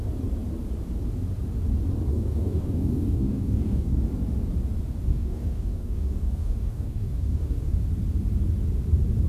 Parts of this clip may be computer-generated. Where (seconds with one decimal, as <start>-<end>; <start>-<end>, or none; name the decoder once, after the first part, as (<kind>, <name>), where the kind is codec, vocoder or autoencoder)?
2.1-4.0 (codec, DAC); 5.1-7.7